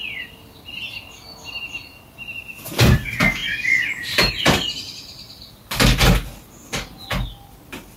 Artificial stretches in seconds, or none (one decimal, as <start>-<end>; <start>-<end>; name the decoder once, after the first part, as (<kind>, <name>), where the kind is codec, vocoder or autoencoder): none